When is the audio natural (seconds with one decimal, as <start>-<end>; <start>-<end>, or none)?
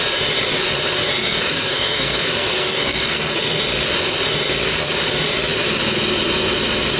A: 0.0-1.2; 3.6-7.0